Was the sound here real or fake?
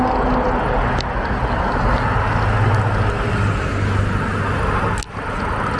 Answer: real